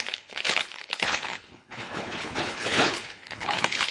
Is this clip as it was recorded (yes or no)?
no